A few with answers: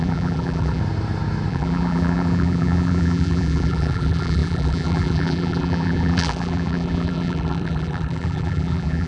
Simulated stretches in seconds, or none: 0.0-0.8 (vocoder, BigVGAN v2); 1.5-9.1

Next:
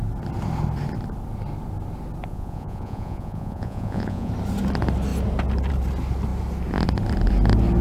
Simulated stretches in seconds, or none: 2.3-4.3 (vocoder, Vocos)